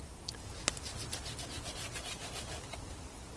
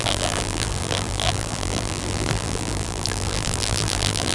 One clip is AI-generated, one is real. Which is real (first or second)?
first